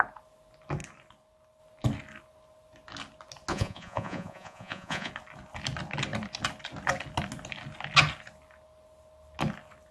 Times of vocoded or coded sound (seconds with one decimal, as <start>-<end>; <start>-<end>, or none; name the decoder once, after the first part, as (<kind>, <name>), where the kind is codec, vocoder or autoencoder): 3.5-5.1 (vocoder, Vocos)